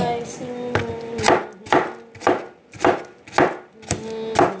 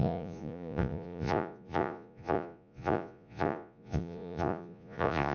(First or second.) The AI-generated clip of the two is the second